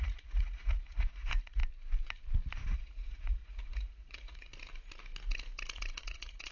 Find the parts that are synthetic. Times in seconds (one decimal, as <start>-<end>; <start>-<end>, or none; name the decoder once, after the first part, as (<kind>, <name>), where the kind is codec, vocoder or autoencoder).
0.0-1.6 (vocoder, Vocos); 2.7-4.5; 6.0-6.5